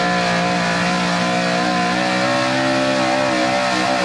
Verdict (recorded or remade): recorded